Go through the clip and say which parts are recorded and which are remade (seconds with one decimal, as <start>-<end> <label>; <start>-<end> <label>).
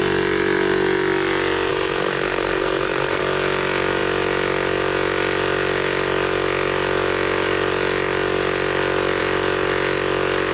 0.0-1.7 recorded; 1.7-3.2 remade; 3.2-10.5 recorded